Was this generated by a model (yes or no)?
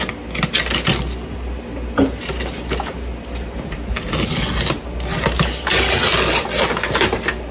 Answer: no